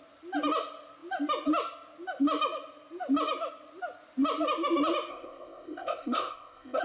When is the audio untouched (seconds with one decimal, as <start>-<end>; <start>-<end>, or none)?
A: 0.0-5.1